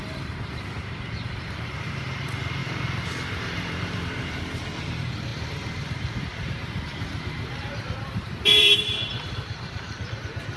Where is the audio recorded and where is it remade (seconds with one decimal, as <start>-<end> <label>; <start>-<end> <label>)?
0.0-10.6 remade